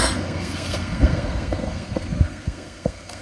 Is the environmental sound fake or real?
fake